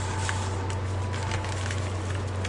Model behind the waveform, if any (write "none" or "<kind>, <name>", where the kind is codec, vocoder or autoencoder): none